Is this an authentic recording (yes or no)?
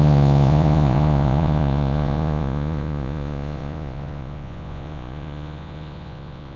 no